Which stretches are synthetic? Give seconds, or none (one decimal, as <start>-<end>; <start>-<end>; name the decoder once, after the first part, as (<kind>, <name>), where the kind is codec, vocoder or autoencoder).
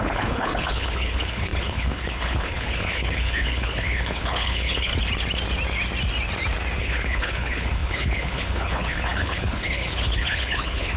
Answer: 0.0-4.9 (codec, HILCodec); 6.8-11.0